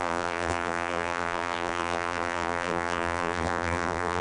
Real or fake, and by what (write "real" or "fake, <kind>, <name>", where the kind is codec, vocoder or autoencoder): fake, vocoder, BigVGAN v2